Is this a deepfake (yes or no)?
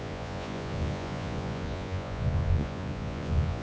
yes